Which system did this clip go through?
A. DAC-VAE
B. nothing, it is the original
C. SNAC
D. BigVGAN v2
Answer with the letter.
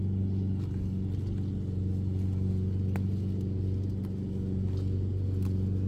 B